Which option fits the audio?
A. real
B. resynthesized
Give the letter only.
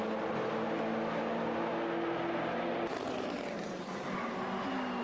A